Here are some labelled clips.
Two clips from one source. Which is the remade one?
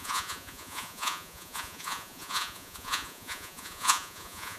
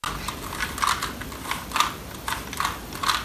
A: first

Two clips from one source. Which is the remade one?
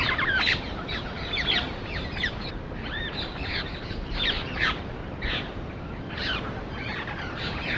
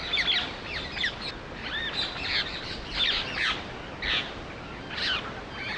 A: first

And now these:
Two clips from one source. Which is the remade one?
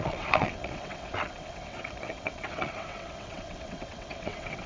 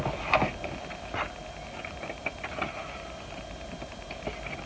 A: first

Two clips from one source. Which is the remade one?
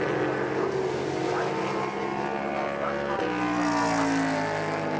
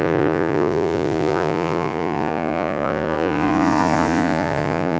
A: second